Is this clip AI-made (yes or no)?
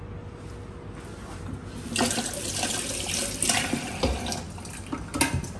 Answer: no